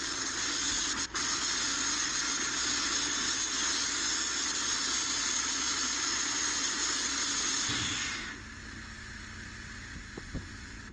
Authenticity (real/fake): real